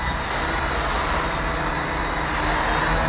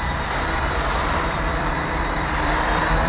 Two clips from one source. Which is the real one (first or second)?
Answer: first